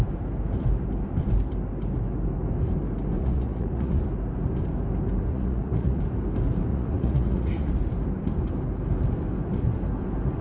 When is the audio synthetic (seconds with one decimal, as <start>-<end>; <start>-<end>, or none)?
3.2-4.0; 5.3-6.0; 6.7-7.7